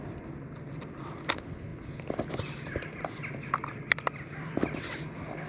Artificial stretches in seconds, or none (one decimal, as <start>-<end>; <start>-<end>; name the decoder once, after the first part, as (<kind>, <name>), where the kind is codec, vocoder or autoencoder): none